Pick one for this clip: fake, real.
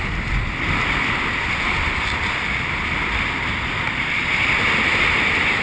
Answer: real